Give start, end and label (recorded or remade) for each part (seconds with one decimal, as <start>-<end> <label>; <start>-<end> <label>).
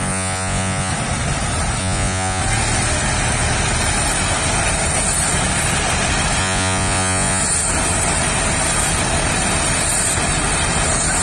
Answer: 0.0-0.9 remade; 0.9-1.8 recorded; 1.8-2.4 remade; 2.4-6.4 recorded; 6.4-7.4 remade; 7.4-11.2 recorded